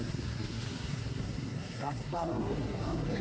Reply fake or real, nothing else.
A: fake